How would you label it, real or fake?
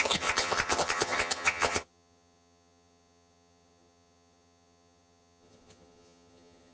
fake